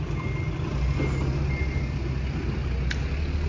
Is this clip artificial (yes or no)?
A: no